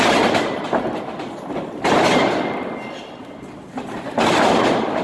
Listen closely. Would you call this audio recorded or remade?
recorded